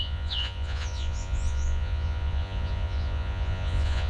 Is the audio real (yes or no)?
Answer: no